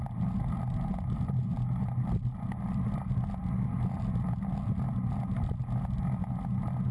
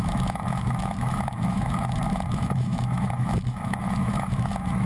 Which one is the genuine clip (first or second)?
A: first